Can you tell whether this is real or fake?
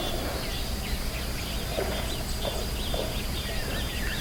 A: real